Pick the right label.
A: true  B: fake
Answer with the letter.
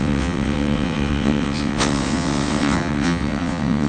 B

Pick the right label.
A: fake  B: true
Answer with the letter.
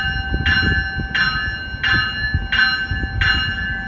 B